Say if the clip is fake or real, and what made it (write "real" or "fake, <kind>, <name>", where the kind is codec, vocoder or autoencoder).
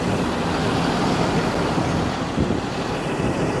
real